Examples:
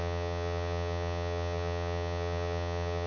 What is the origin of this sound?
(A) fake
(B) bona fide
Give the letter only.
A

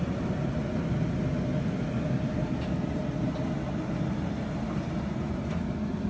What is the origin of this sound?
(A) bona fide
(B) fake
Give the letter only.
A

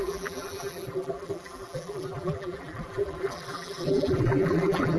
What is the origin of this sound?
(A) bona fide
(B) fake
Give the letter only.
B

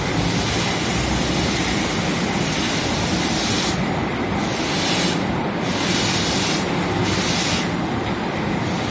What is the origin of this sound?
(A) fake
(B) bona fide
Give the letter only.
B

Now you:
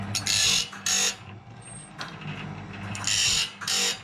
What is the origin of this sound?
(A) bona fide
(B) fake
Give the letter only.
A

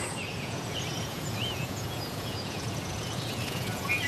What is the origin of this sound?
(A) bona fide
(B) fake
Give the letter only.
B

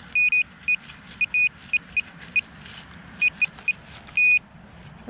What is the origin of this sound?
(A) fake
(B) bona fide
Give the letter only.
B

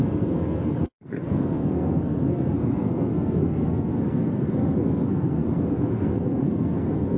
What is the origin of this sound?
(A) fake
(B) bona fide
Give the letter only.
A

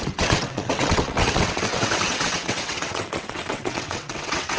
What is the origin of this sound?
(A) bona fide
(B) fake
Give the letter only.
B